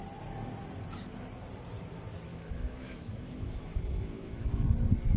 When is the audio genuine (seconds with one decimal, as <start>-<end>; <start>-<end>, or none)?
0.0-2.3; 4.6-5.2